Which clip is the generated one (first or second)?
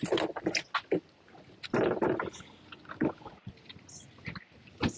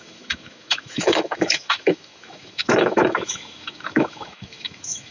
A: second